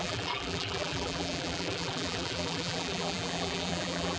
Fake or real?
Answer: fake